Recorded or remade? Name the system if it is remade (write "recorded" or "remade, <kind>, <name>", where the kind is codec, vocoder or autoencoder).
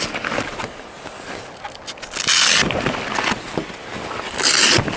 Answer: recorded